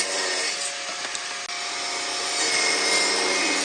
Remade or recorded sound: recorded